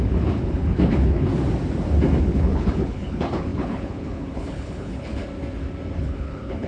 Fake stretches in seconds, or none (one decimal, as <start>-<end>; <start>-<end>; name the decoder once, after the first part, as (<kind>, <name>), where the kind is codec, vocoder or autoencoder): 0.0-1.3 (codec, HILCodec); 2.2-5.2; 6.0-6.7